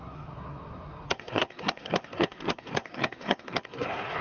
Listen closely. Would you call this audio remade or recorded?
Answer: remade